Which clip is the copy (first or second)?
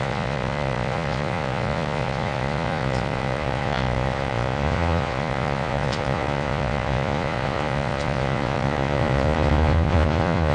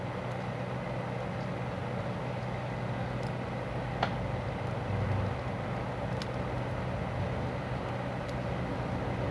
first